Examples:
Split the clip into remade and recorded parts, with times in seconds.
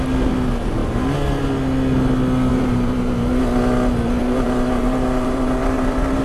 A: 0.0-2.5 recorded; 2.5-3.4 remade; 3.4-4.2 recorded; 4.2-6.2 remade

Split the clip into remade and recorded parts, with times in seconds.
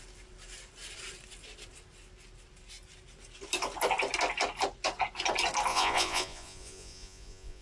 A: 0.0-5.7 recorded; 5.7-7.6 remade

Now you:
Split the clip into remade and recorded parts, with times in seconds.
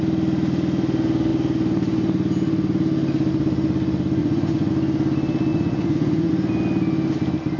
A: 0.0-4.2 recorded; 4.2-4.7 remade; 4.7-5.5 recorded; 5.5-6.3 remade; 6.3-7.6 recorded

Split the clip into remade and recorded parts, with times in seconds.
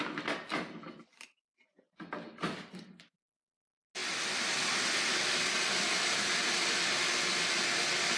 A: 0.0-8.2 recorded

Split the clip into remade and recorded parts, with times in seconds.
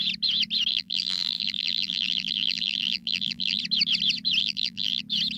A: 0.0-0.7 recorded; 0.7-3.6 remade; 3.6-4.4 recorded; 4.4-5.0 remade; 5.0-5.4 recorded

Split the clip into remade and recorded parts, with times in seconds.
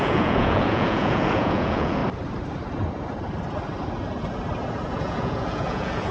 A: 0.0-2.0 remade; 2.0-5.0 recorded; 5.0-6.1 remade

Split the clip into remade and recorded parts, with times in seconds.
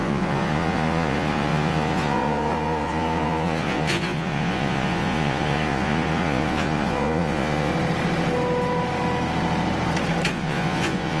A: 0.0-7.7 remade; 7.7-10.3 recorded; 10.3-11.2 remade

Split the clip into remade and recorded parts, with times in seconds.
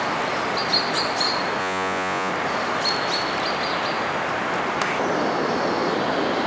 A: 0.0-1.6 recorded; 1.6-2.3 remade; 2.3-6.5 recorded